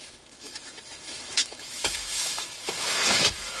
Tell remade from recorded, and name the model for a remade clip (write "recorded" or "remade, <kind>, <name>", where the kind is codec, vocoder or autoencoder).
remade, autoencoder, DAC-VAE